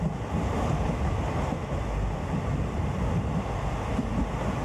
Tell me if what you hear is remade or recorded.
recorded